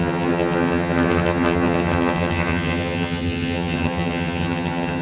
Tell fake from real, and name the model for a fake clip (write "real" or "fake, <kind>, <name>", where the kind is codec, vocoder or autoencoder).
fake, vocoder, HiFi-GAN